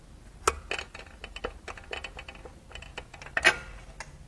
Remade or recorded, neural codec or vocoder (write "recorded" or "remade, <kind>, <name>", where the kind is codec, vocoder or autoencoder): recorded